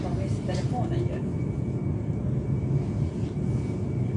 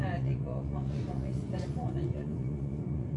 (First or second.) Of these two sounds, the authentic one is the first